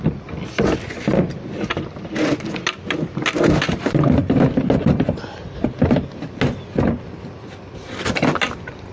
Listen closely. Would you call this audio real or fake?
real